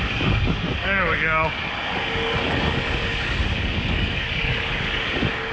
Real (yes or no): no